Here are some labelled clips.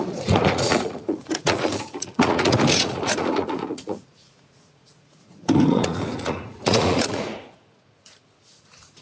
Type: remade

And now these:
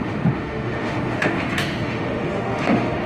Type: remade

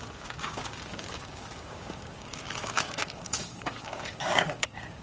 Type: remade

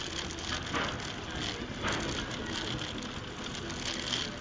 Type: recorded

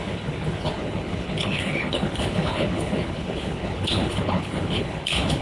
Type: remade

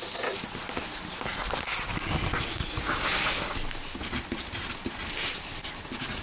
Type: recorded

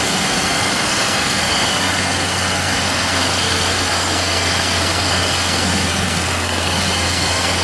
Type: remade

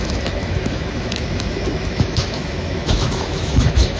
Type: remade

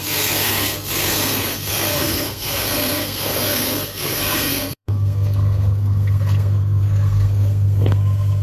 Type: remade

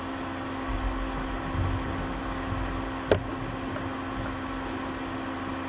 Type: recorded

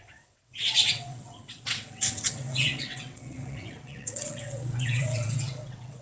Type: remade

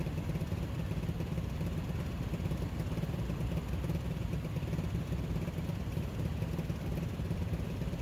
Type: recorded